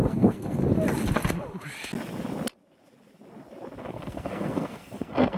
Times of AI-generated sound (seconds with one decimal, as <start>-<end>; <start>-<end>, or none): 0.0-0.6; 3.8-5.4